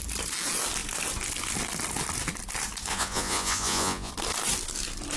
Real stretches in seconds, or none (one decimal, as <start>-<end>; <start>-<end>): 0.0-2.9; 4.1-5.2